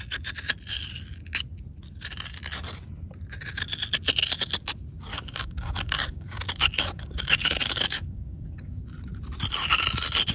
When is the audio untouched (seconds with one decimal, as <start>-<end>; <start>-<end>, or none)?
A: 0.0-5.1; 8.8-10.3